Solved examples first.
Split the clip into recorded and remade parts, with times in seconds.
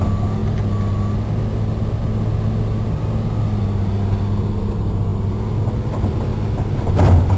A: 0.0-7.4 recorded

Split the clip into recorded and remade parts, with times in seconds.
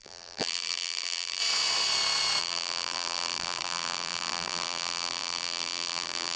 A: 0.0-1.4 remade; 1.4-2.4 recorded; 2.4-6.4 remade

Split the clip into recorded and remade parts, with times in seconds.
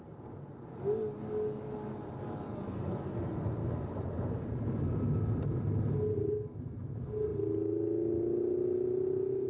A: 0.0-9.5 recorded